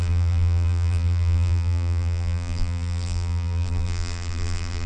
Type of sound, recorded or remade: remade